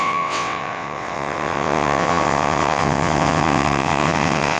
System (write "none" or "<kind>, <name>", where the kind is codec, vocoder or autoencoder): vocoder, WaveNeXt